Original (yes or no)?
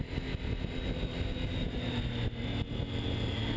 yes